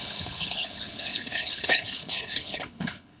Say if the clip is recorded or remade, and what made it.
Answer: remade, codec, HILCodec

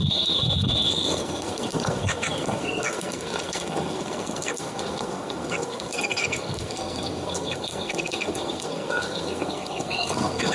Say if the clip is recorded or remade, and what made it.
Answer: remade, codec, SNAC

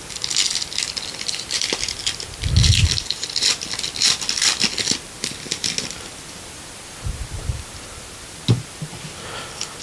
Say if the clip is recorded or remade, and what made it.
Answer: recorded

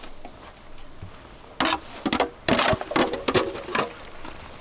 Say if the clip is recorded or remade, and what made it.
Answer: recorded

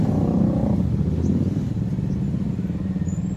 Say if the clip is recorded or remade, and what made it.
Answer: recorded